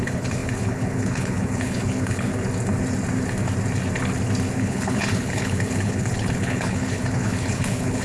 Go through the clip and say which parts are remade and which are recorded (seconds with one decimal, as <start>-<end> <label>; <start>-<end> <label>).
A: 0.0-2.3 remade; 2.3-4.6 recorded; 4.6-8.0 remade